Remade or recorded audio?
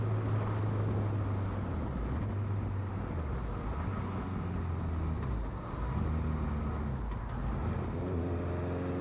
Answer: recorded